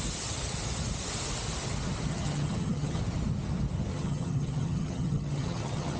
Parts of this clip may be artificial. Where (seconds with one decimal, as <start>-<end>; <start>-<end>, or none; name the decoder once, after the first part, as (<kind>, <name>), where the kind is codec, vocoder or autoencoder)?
2.1-3.0 (vocoder, HiFi-GAN); 3.9-6.0

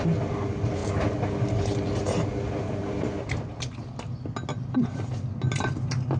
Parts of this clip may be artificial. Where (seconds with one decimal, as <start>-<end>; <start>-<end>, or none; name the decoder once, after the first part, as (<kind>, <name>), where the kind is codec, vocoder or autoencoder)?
none